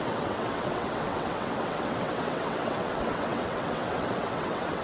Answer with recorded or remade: remade